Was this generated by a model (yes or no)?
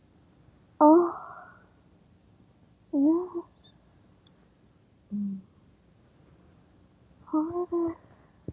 no